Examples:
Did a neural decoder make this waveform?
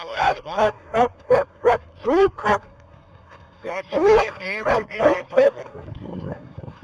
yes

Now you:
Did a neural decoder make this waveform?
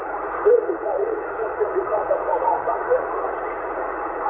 yes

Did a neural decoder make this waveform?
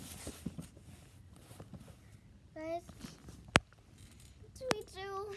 no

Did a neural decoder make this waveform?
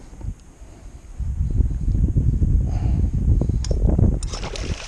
no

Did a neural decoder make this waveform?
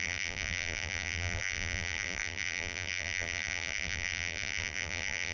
yes